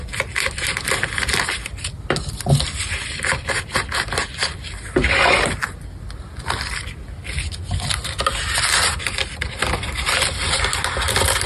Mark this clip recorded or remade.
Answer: recorded